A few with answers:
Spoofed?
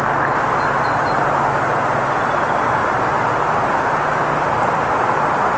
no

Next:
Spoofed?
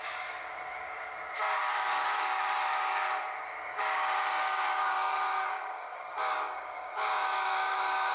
yes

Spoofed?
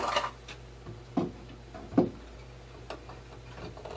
no